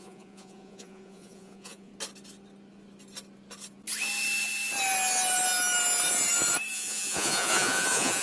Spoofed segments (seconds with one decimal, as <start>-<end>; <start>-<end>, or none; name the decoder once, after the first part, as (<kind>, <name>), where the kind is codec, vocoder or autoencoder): 0.0-1.9 (vocoder, Vocos); 6.7-8.2